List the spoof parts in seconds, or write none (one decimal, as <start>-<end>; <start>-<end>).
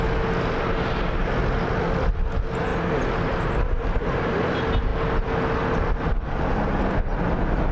none